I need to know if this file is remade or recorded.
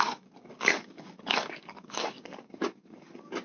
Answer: remade